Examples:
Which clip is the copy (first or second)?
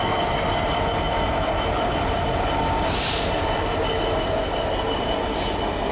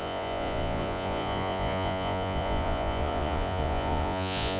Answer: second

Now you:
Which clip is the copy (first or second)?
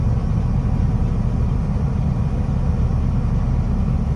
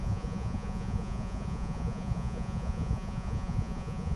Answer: second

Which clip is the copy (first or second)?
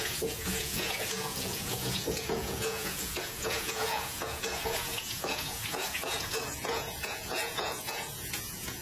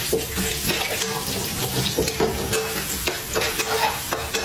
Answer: first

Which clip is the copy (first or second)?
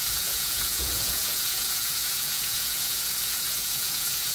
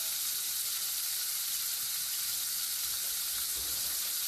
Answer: first